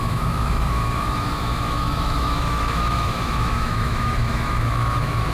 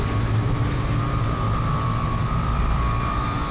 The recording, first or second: second